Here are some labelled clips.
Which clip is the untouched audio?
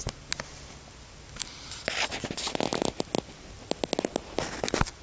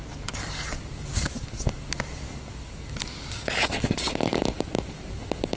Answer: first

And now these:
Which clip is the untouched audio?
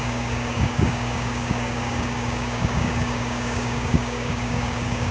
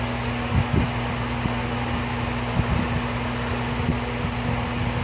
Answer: second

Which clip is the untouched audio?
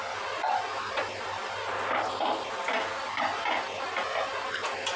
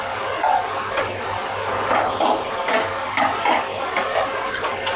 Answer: first